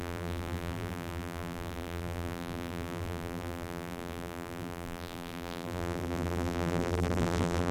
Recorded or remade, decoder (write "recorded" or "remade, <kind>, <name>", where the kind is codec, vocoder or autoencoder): remade, vocoder, BigVGAN v2